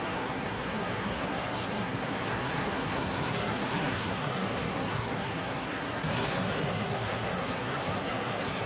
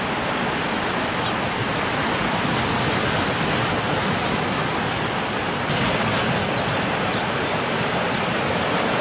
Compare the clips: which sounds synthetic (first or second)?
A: first